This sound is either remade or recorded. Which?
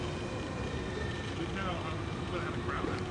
recorded